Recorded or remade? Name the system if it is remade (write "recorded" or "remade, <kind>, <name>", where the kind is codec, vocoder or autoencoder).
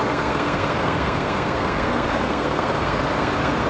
remade, codec, SNAC